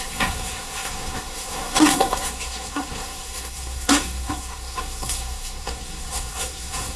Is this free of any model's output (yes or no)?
no